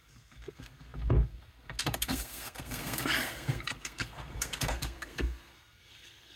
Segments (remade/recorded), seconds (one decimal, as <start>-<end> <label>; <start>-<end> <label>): 0.0-6.4 remade